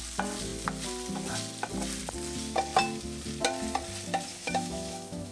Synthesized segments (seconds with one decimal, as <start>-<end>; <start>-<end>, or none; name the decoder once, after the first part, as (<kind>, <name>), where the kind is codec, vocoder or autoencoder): 4.3-5.3 (autoencoder, DAC-VAE)